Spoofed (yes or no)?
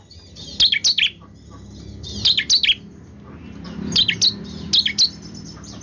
no